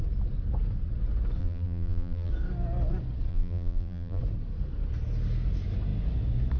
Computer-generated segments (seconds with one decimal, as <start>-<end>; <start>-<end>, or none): 1.4-2.3; 3.3-4.2

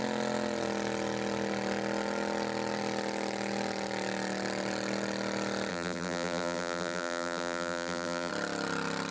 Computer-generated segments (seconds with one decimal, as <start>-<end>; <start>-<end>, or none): 5.7-8.3

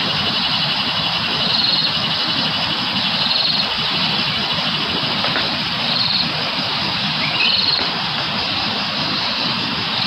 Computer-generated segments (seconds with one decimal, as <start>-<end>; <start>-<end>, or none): 0.0-1.8; 5.9-10.1

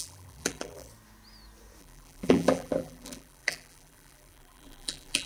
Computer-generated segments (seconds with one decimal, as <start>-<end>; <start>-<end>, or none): 0.0-0.9; 1.8-5.3

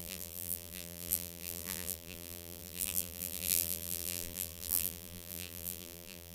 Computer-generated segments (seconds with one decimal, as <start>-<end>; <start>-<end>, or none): 0.0-6.3